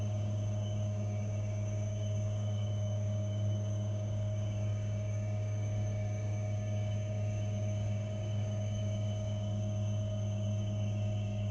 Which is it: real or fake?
fake